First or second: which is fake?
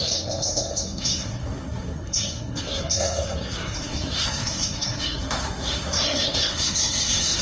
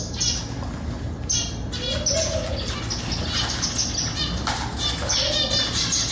first